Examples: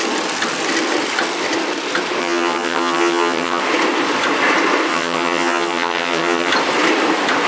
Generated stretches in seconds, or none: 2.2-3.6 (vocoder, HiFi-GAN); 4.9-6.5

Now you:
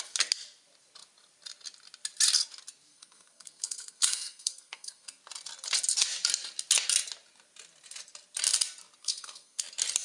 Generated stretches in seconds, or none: 2.9-5.2 (codec, SNAC); 9.0-9.6

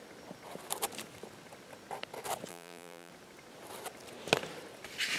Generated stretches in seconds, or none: 2.5-3.1 (vocoder, BigVGAN v2)

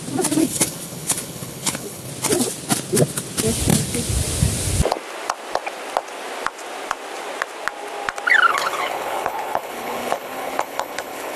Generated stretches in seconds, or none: 0.4-2.1 (codec, HILCodec); 8.5-11.4

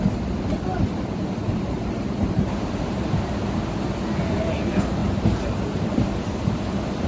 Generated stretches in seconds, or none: 1.4-3.1 (vocoder, BigVGAN v2); 5.0-5.9

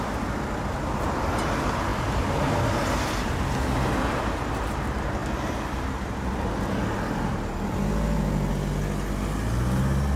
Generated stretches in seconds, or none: none

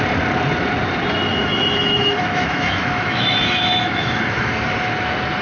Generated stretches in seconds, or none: 1.3-4.5 (autoencoder, DAC-VAE)

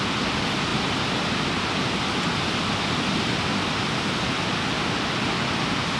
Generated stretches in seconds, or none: 0.7-4.3 (vocoder, BigVGAN v2)